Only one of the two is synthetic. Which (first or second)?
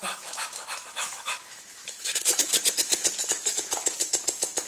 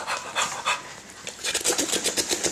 first